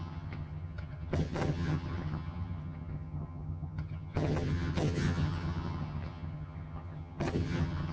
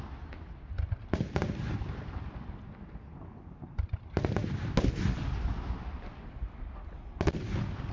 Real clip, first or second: second